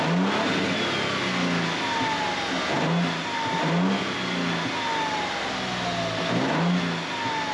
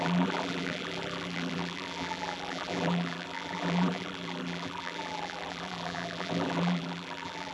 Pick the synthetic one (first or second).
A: second